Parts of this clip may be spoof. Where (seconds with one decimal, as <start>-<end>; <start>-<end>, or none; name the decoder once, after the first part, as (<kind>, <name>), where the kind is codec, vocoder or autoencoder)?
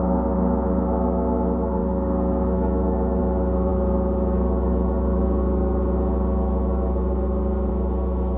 none